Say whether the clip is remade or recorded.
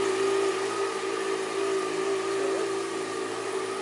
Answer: recorded